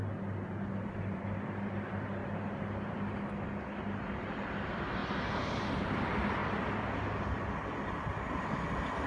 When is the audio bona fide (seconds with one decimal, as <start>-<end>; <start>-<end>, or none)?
0.0-0.8; 2.2-4.3; 5.0-5.6